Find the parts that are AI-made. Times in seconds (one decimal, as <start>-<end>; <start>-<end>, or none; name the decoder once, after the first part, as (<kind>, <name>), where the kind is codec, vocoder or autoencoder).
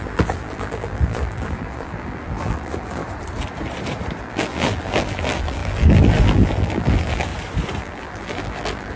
0.0-3.0 (vocoder, BigVGAN v2); 4.2-7.3; 7.8-9.0